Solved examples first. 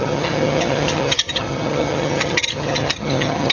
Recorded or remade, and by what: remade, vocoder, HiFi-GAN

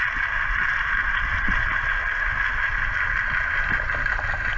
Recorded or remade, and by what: recorded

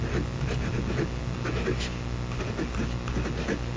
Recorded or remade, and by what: recorded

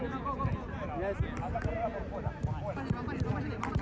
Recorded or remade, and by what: recorded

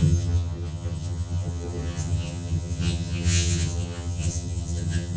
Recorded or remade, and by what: remade, vocoder, HiFi-GAN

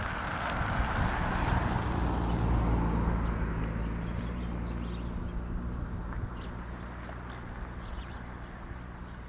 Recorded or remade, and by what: recorded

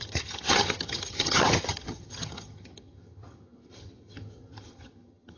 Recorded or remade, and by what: remade, vocoder, HiFi-GAN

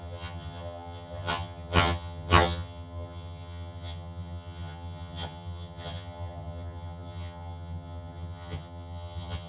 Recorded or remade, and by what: remade, vocoder, HiFi-GAN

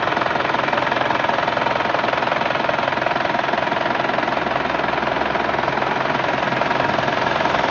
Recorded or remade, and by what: recorded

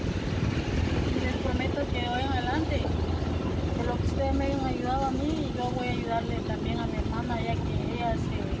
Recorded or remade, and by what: recorded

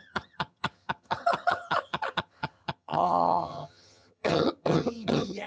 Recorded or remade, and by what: remade, vocoder, HiFi-GAN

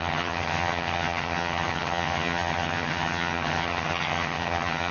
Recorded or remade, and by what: remade, vocoder, HiFi-GAN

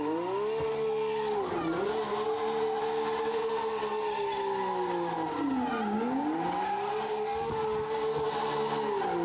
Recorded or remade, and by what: recorded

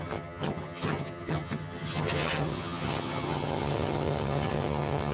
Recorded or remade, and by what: remade, vocoder, HiFi-GAN